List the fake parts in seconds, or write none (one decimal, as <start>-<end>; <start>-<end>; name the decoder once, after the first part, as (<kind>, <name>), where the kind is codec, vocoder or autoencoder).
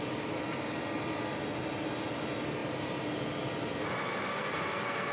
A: 4.3-5.1 (codec, SNAC)